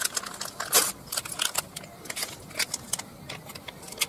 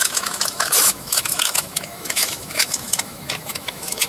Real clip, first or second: first